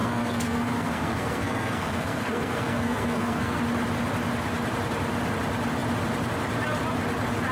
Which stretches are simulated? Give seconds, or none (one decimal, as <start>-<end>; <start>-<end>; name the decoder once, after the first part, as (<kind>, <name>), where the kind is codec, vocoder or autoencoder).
0.0-3.6 (codec, SNAC)